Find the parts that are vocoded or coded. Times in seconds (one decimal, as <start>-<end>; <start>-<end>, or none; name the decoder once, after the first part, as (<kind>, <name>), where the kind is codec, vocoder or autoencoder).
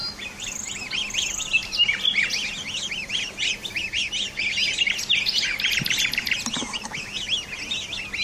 none